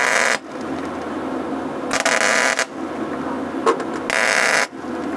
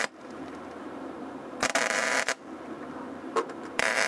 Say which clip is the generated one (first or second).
second